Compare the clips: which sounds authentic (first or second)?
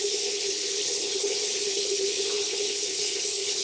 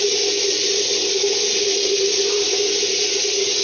second